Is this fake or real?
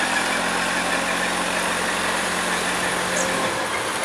real